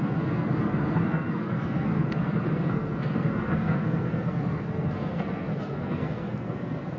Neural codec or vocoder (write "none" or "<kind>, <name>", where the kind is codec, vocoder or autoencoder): codec, SNAC